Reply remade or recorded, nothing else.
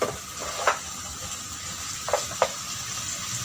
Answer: recorded